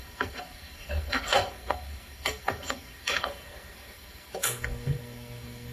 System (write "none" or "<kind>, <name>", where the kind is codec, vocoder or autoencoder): codec, SNAC